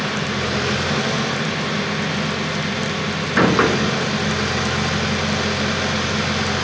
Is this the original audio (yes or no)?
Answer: yes